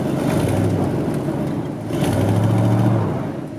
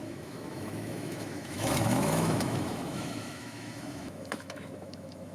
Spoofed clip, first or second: second